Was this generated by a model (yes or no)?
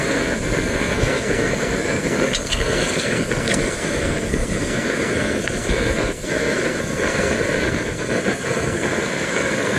yes